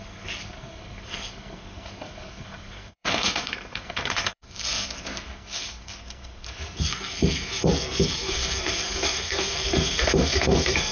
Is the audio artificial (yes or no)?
yes